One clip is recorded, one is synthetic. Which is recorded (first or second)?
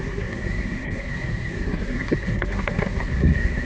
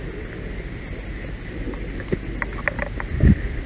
second